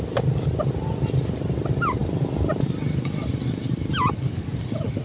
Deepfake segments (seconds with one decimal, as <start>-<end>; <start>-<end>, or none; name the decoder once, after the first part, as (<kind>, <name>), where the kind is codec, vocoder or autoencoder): 0.0-5.0 (vocoder, BigVGAN v2)